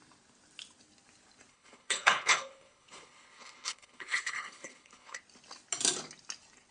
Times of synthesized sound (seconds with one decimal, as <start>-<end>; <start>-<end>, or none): 1.5-5.2